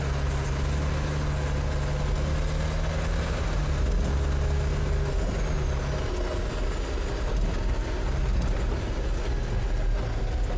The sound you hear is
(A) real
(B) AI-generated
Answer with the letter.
A